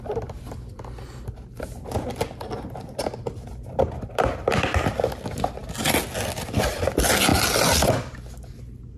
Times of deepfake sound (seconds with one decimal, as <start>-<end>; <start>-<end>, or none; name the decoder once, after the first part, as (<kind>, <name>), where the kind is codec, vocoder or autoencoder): none